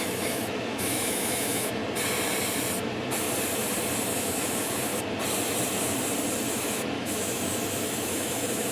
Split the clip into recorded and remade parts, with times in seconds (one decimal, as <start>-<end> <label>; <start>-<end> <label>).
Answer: 0.0-1.8 remade; 1.8-4.1 recorded; 4.1-4.9 remade; 4.9-6.5 recorded; 6.5-8.7 remade